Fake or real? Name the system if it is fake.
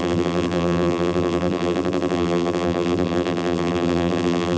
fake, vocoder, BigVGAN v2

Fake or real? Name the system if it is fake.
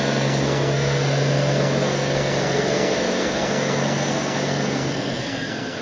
fake, codec, SNAC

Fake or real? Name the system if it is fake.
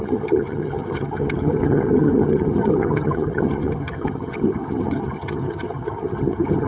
fake, vocoder, HiFi-GAN